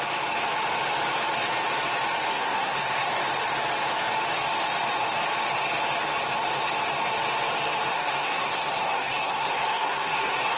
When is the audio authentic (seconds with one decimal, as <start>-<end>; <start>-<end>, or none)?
0.0-2.3; 3.1-7.9